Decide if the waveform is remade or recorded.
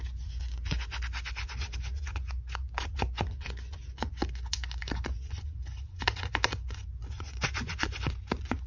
remade